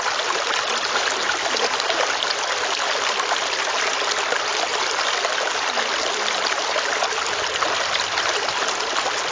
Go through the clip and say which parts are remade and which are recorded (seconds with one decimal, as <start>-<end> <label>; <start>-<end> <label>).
0.0-9.3 recorded